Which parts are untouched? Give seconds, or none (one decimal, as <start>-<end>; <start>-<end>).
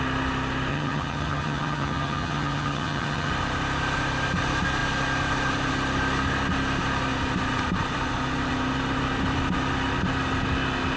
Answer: 0.0-0.7; 3.3-11.0